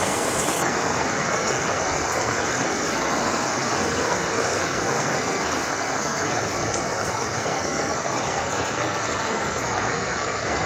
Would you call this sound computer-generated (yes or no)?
yes